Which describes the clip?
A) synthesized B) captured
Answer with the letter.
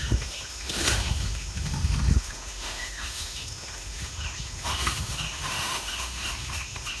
A